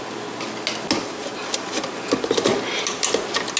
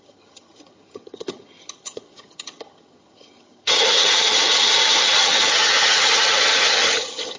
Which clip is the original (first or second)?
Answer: first